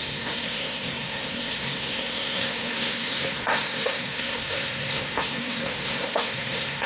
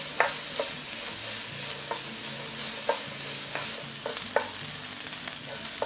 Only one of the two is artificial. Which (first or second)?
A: first